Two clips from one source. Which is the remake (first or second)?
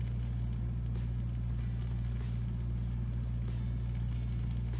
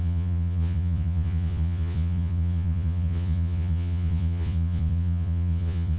second